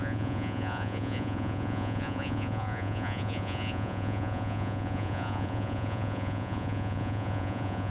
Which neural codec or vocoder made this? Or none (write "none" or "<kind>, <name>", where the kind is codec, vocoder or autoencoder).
vocoder, Vocos